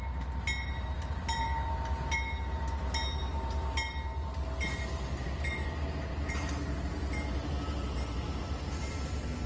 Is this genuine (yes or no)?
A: yes